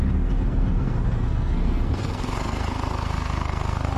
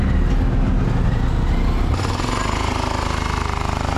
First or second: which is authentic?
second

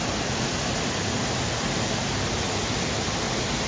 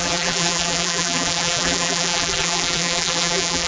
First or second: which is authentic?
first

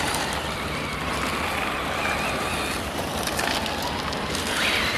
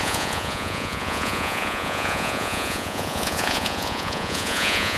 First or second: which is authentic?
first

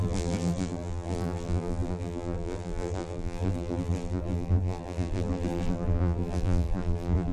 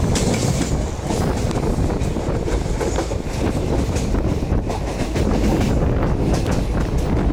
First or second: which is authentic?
second